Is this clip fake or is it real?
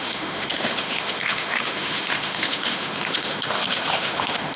fake